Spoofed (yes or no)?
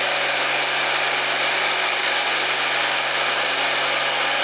no